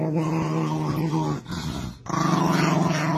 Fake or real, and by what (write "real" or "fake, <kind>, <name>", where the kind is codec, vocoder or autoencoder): real